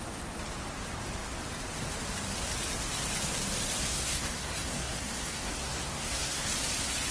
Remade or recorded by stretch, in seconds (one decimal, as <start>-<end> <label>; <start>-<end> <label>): 0.0-3.9 recorded; 3.9-6.5 remade; 6.5-7.1 recorded